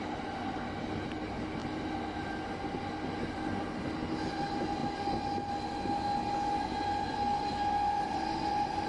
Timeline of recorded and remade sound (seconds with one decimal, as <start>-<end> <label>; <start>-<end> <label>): 0.0-8.9 recorded